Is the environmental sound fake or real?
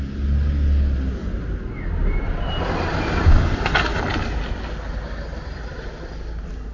real